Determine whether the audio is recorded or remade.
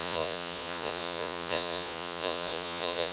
remade